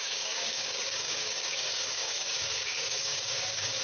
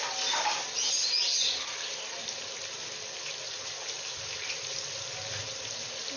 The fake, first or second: first